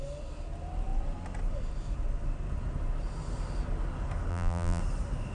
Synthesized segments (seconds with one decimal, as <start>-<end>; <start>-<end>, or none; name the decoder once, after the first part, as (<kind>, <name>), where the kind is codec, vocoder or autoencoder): 4.3-4.8 (vocoder, BigVGAN v2)